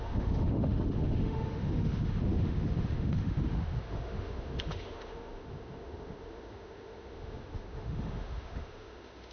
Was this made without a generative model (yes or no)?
no